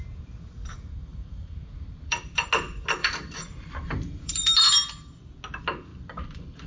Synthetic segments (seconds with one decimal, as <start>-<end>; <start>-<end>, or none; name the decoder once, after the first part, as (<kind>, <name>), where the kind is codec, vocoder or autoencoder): 1.1-2.5 (vocoder, BigVGAN v2); 3.0-4.6; 5.9-6.7

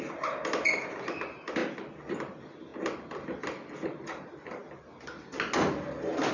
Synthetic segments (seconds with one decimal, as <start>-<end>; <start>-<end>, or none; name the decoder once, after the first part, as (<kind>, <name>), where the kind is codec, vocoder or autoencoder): 0.0-1.6 (vocoder, BigVGAN v2); 2.1-2.7; 3.4-4.6

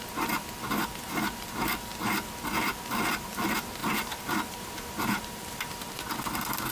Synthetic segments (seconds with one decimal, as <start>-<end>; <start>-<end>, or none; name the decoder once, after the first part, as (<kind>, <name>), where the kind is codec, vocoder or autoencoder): 3.8-5.9 (vocoder, BigVGAN v2)

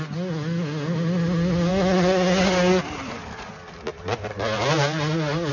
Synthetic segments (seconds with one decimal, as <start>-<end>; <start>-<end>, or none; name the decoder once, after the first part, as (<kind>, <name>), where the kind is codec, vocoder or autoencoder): 3.9-5.5 (vocoder, BigVGAN v2)

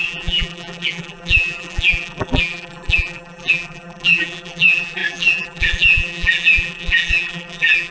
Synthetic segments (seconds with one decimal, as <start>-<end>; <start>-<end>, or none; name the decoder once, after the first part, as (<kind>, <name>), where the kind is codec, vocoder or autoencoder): 0.0-7.9 (vocoder, BigVGAN v2)

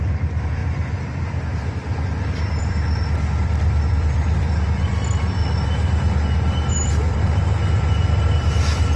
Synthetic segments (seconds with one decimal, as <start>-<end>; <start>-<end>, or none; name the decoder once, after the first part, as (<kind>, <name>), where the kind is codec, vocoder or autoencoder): 0.0-0.6 (vocoder, BigVGAN v2); 2.6-5.4; 6.7-9.0

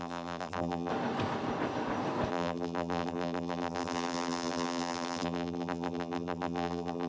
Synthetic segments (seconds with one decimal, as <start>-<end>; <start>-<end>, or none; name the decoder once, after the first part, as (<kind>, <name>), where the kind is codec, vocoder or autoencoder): 0.0-0.9 (vocoder, BigVGAN v2); 2.3-7.1